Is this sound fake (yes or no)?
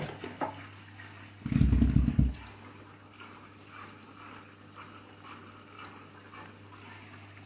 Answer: no